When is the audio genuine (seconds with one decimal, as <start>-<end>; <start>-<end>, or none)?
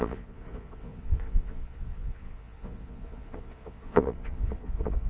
none